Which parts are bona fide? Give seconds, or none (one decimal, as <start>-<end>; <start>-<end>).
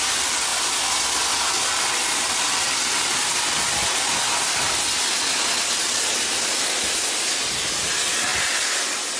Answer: 0.0-9.2